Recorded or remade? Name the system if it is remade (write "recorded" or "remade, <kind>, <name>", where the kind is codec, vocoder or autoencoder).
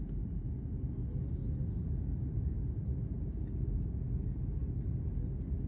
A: recorded